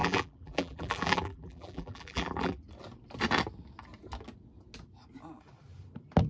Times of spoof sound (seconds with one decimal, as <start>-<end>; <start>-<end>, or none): 0.0-2.6